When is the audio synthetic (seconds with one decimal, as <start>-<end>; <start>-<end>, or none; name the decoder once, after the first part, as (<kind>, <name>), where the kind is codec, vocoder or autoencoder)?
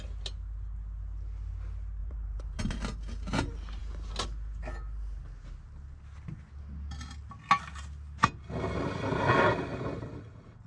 2.0-2.6 (vocoder, BigVGAN v2)